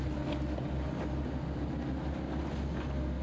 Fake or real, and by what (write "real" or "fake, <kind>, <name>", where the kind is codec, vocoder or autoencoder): real